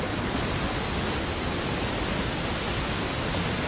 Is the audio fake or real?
real